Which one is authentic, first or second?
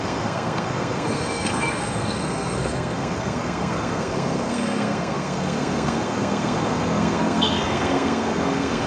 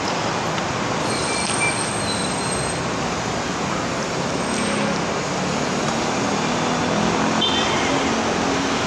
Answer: second